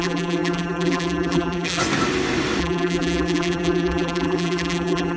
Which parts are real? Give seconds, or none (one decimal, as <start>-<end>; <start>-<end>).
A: 1.8-2.6